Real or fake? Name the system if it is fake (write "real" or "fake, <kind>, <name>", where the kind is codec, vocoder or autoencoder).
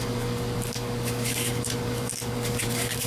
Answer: fake, codec, DAC